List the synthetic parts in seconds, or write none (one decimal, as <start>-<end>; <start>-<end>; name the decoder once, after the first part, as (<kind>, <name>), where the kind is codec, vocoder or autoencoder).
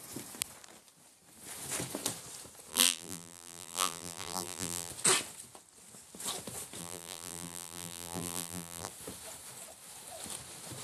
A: 2.7-4.9 (vocoder, BigVGAN v2); 6.8-8.9